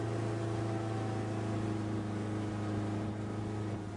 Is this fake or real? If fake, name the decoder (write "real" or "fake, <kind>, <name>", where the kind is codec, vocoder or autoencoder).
real